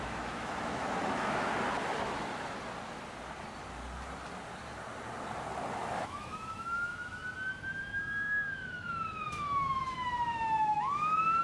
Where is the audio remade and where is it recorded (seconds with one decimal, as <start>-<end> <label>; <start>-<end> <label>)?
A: 0.0-1.5 remade; 1.5-6.0 recorded; 6.0-7.2 remade; 7.2-7.9 recorded; 7.9-11.4 remade